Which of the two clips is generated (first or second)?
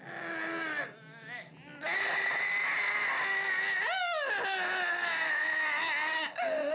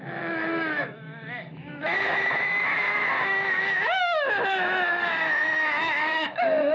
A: second